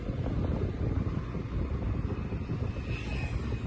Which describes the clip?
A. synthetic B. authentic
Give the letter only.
B